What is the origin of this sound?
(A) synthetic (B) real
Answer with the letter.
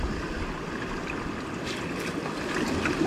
B